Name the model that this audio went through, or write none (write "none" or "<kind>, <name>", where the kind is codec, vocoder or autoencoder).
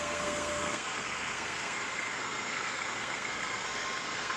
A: codec, SNAC